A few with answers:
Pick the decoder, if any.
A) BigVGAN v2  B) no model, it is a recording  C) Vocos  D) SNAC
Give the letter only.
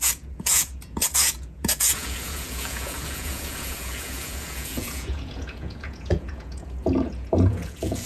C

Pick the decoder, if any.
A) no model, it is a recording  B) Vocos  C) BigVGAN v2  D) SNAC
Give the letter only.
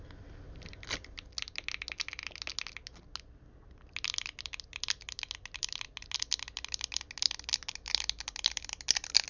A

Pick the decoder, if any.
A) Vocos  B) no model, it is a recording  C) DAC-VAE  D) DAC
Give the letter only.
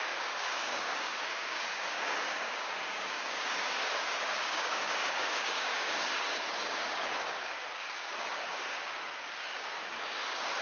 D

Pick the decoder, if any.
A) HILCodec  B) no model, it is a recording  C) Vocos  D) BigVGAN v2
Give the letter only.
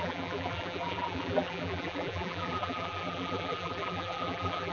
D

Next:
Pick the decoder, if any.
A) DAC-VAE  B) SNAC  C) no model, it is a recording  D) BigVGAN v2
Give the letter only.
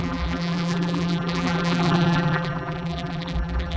D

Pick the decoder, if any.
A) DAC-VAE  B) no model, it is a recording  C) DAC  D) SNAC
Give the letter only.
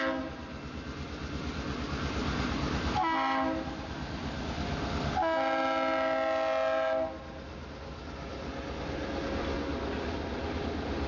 B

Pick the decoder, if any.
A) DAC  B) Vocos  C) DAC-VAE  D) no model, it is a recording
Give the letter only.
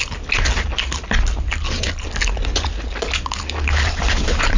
D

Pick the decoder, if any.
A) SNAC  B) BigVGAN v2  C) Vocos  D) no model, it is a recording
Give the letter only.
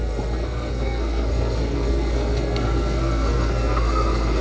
A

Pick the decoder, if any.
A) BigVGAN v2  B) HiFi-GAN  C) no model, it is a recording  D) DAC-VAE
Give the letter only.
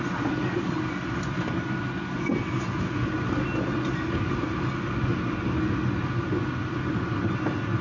C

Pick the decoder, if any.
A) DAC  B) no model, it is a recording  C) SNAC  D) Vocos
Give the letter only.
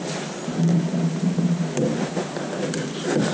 B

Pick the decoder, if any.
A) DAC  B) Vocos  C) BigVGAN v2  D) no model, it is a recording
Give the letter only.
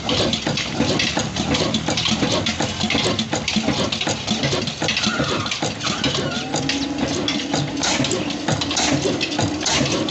D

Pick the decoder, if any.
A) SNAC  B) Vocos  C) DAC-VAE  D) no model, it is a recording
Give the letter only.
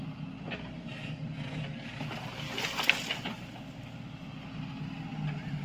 D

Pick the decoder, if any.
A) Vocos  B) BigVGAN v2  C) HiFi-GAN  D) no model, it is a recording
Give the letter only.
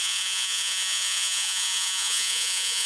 A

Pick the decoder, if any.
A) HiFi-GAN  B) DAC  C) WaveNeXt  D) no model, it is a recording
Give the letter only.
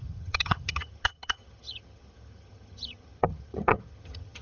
A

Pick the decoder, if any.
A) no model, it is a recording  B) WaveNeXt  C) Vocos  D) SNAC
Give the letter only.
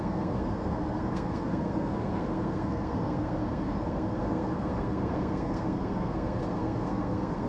D